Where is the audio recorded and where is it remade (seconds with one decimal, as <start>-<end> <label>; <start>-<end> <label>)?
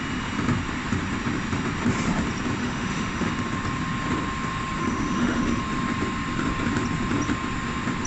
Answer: 0.0-2.6 recorded; 2.6-3.3 remade; 3.3-4.8 recorded; 4.8-5.6 remade; 5.6-8.1 recorded